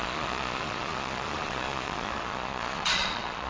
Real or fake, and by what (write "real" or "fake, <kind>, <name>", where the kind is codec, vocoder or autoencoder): fake, vocoder, Vocos